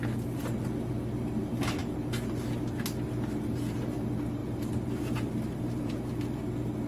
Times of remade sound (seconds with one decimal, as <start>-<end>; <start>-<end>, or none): 4.4-5.8